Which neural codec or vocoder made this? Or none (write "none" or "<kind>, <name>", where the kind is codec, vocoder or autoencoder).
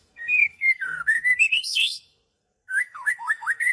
codec, SNAC